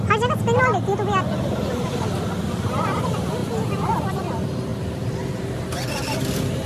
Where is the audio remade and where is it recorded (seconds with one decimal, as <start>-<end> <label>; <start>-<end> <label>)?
0.0-6.7 recorded